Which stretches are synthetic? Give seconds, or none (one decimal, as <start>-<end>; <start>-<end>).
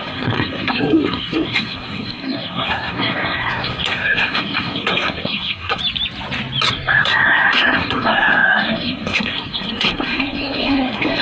0.0-5.8; 6.7-11.2